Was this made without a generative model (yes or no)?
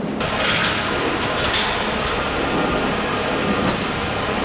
yes